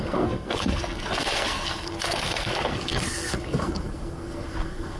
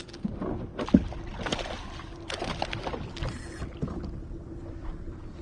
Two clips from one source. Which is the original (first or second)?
second